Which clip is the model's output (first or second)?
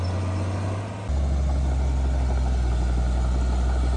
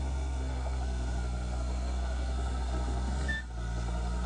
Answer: second